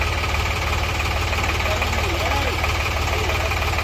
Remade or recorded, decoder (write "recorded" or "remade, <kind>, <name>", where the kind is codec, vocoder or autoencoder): recorded